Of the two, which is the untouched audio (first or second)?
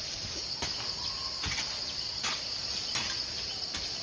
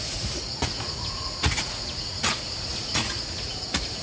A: first